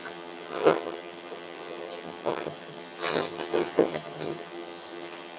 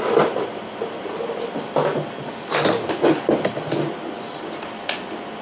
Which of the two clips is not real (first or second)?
first